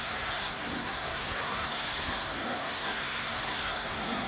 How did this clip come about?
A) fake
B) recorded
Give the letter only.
A